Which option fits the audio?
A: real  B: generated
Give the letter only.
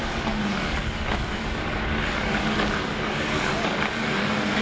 B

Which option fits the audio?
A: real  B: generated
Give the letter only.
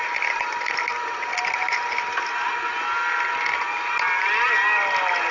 A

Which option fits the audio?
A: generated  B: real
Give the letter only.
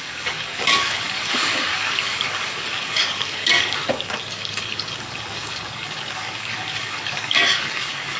A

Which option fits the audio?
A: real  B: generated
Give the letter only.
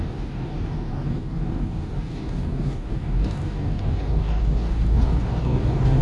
B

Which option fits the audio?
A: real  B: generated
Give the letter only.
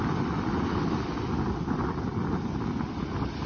A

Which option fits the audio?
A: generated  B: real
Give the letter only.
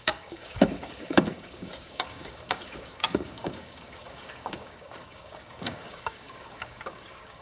A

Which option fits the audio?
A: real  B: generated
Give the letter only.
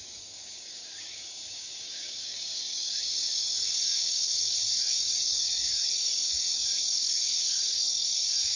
B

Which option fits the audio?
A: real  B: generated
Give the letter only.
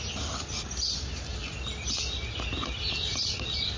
A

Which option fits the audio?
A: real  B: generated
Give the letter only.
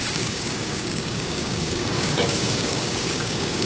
B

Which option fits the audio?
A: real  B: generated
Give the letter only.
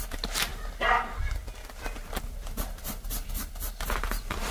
A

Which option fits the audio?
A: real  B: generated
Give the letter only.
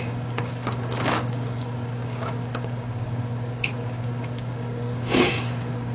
B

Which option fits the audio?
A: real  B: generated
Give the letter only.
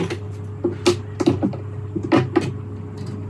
A